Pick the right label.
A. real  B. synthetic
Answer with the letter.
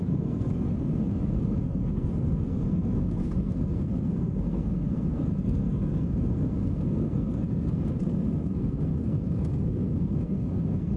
B